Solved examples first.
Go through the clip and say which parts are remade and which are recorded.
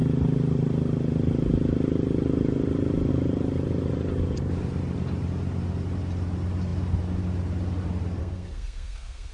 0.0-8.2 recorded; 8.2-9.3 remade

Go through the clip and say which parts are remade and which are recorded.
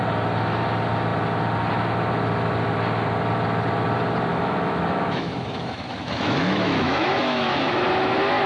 0.0-4.3 recorded; 4.3-7.8 remade; 7.8-8.5 recorded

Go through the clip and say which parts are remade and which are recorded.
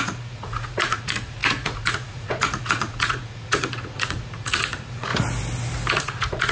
0.0-5.1 remade; 5.1-5.9 recorded; 5.9-6.5 remade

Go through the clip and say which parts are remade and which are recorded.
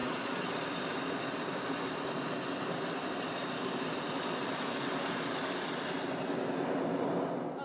0.0-0.5 remade; 0.5-7.6 recorded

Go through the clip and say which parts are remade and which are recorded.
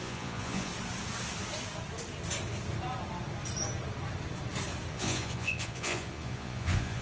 0.0-0.7 remade; 0.7-4.9 recorded; 4.9-7.0 remade